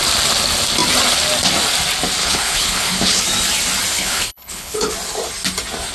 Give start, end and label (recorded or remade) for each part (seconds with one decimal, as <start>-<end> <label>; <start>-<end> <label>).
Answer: 0.0-2.2 recorded; 2.2-3.2 remade; 3.2-3.9 recorded; 3.9-4.9 remade; 4.9-5.9 recorded